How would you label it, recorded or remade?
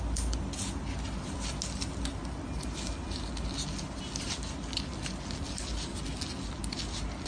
recorded